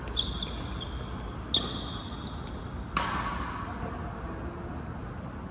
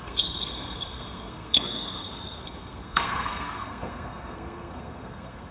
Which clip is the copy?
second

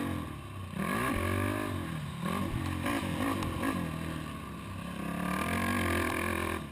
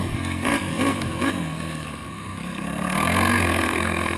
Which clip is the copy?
second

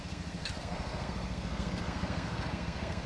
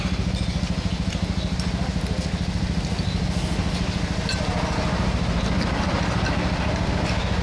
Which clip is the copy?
first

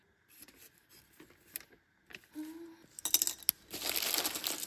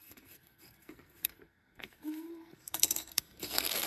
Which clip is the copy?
second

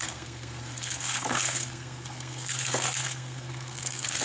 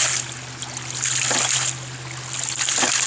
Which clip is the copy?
first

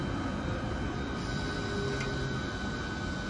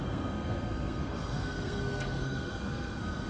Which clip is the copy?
second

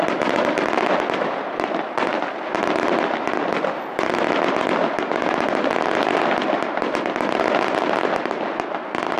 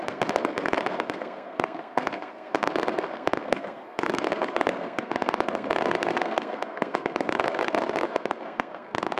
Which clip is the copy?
second